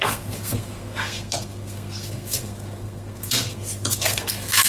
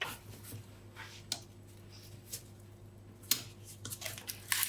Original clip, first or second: second